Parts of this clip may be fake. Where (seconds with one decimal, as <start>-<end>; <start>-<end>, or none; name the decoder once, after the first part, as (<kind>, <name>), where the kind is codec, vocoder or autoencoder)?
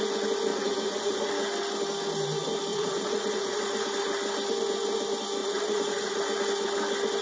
0.5-1.3 (vocoder, Vocos); 2.7-3.6; 5.4-6.2